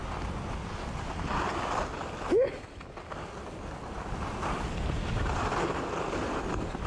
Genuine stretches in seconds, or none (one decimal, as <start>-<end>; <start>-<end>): 0.0-6.9

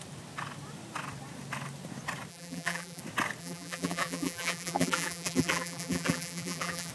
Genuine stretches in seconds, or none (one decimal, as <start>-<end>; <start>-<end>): 0.0-2.3; 3.0-3.4

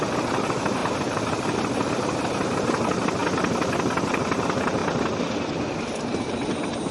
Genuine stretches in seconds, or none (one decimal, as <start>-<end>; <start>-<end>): 3.2-4.0; 4.8-6.9